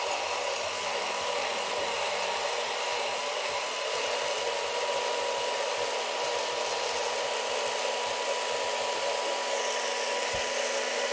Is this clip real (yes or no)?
yes